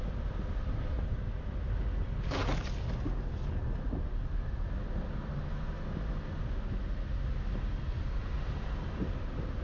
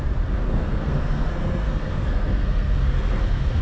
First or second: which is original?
first